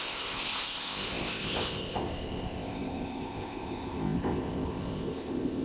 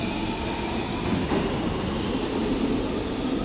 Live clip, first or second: second